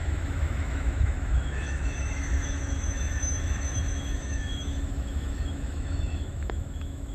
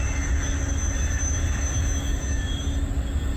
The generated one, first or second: first